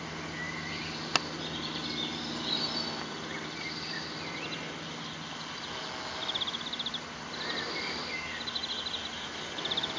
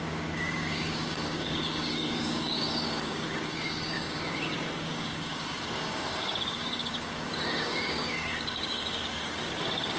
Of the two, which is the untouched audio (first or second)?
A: first